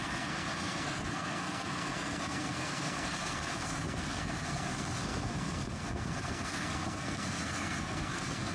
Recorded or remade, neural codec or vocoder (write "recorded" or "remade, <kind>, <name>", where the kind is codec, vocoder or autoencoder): remade, codec, SNAC